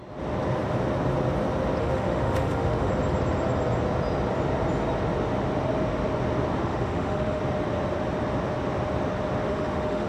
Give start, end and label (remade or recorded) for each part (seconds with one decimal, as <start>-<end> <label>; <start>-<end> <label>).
0.0-1.8 recorded; 1.8-2.9 remade; 2.9-6.6 recorded; 6.6-7.4 remade; 7.4-9.5 recorded; 9.5-10.1 remade